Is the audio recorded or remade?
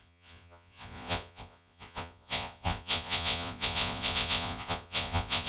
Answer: remade